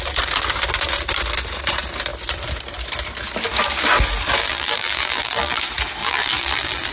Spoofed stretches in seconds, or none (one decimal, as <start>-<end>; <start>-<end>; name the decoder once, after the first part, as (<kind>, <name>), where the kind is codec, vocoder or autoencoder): 4.4-5.6 (vocoder, BigVGAN v2); 6.0-6.9